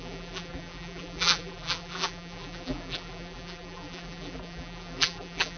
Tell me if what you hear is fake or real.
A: fake